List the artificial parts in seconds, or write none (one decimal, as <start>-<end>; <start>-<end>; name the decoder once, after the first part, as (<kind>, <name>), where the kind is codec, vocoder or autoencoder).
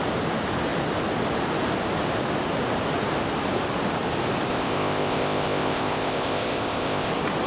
4.5-7.1 (codec, ZipCodec)